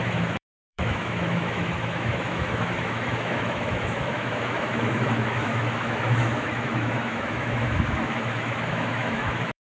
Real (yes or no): no